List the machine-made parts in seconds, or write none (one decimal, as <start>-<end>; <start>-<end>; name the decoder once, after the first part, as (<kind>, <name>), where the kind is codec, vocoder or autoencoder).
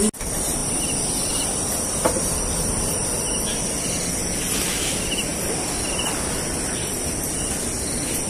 0.6-3.4 (vocoder, BigVGAN v2)